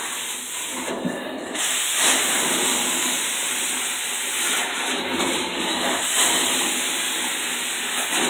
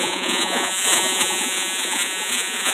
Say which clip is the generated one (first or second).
second